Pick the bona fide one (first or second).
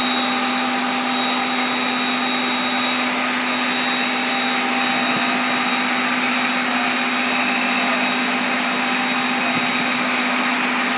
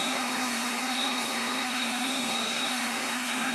first